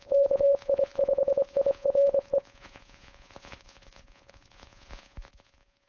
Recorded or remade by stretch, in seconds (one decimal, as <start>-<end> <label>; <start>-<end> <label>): 0.0-5.9 remade